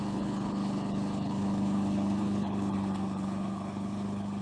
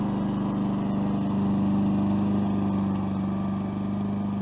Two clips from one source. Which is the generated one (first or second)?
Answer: first